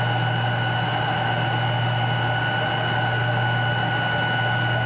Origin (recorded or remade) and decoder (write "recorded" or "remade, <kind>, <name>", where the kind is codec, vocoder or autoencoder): recorded